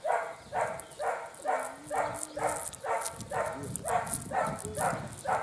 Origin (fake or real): real